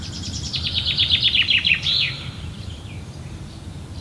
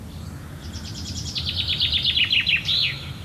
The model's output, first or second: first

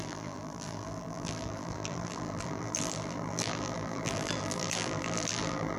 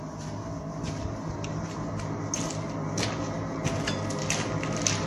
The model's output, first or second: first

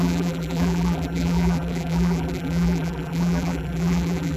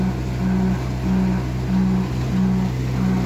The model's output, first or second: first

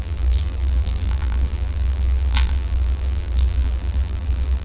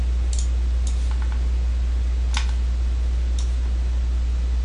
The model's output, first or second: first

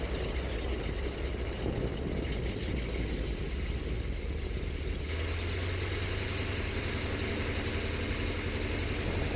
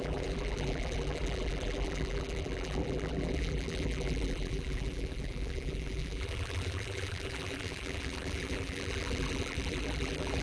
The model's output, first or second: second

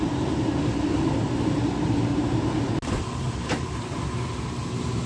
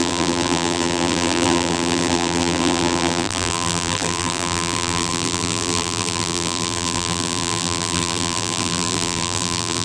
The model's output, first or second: second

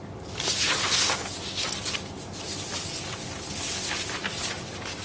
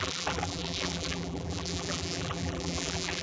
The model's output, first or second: second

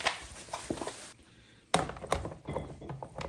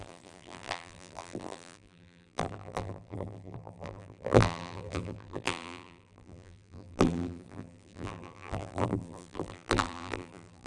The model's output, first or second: second